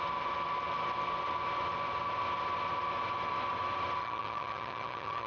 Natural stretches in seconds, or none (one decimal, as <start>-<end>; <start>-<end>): 0.0-4.0